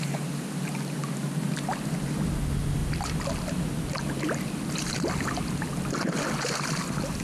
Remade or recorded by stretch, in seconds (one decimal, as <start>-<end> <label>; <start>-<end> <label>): 0.0-7.2 recorded